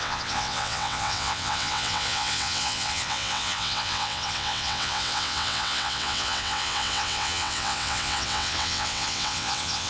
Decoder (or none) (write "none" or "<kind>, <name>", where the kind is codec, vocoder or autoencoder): vocoder, WaveNeXt